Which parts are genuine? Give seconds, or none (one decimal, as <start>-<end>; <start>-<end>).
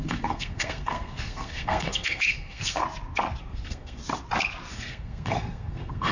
2.8-3.4; 4.0-4.7